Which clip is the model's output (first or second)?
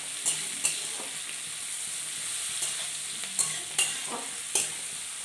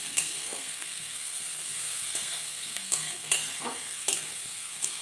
second